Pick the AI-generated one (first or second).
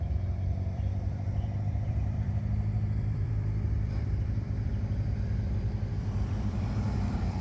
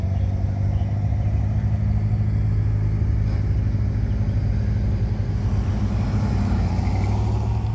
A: first